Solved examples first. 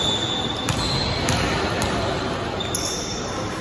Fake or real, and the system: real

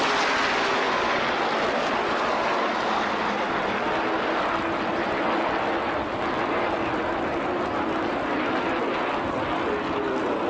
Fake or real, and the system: real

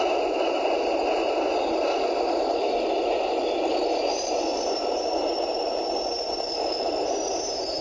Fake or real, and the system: fake, vocoder, BigVGAN v2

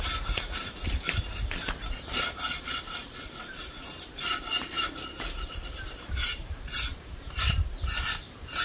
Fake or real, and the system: fake, vocoder, BigVGAN v2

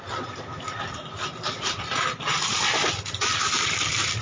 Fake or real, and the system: fake, vocoder, BigVGAN v2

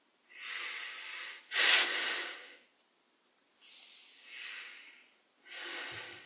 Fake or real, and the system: real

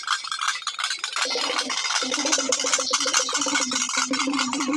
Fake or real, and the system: fake, vocoder, BigVGAN v2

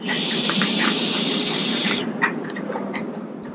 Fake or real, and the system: fake, vocoder, BigVGAN v2